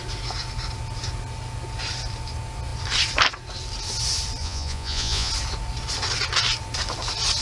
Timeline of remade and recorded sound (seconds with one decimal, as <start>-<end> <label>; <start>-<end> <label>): 0.0-4.4 recorded; 4.4-5.3 remade; 5.3-7.4 recorded

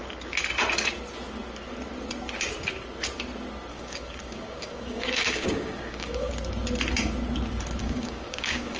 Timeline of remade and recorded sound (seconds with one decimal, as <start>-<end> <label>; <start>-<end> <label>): 0.0-3.7 recorded; 3.7-6.3 remade; 6.3-7.8 recorded; 7.8-8.8 remade

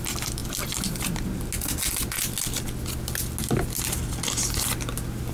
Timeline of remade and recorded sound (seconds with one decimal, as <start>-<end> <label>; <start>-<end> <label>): 0.0-5.3 recorded

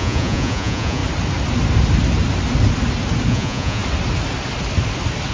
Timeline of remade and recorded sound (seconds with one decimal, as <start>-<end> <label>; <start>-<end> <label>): 0.0-1.0 remade; 1.0-3.3 recorded; 3.3-3.8 remade; 3.8-5.3 recorded